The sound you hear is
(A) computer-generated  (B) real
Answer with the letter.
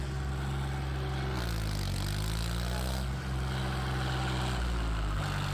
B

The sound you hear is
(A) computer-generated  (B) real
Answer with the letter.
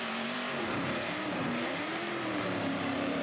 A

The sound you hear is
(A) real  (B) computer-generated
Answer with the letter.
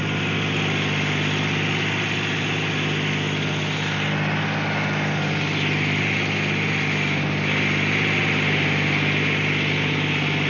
A